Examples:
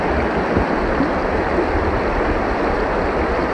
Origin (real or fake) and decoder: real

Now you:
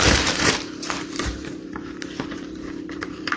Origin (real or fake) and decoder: fake, vocoder, BigVGAN v2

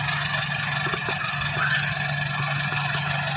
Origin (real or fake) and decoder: real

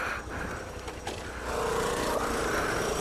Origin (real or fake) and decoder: real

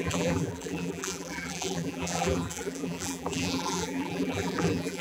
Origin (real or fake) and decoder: fake, vocoder, BigVGAN v2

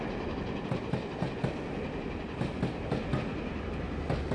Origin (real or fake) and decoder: real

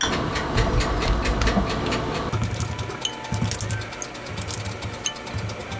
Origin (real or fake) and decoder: real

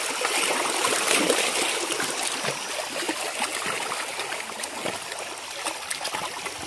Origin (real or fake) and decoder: real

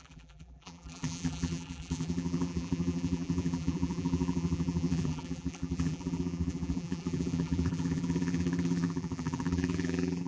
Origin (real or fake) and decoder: fake, vocoder, BigVGAN v2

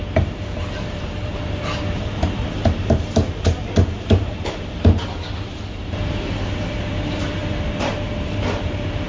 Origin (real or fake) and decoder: fake, vocoder, BigVGAN v2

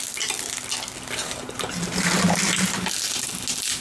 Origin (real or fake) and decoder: real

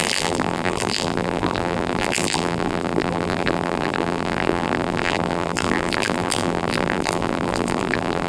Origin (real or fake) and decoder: fake, vocoder, BigVGAN v2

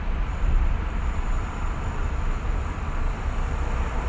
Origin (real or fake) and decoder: fake, vocoder, BigVGAN v2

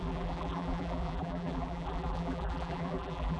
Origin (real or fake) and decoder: fake, vocoder, BigVGAN v2